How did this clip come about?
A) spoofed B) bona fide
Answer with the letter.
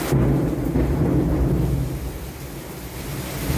B